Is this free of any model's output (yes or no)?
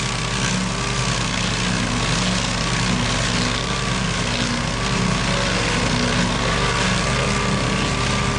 yes